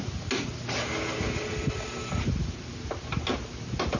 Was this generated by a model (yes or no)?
no